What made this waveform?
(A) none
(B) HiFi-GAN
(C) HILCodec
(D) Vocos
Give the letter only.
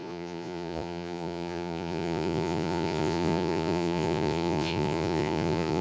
D